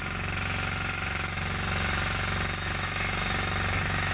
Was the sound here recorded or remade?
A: remade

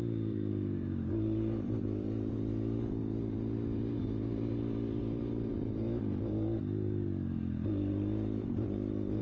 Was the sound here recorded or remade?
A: remade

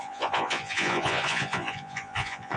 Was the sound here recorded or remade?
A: remade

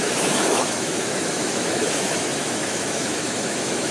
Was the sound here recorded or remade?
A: remade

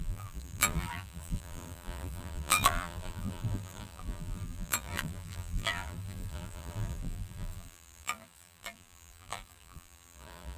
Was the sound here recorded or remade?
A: remade